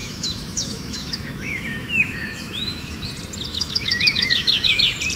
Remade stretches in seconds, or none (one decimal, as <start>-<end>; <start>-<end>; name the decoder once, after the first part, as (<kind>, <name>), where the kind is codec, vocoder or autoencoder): 0.0-3.1 (autoencoder, DAC-VAE); 3.5-4.8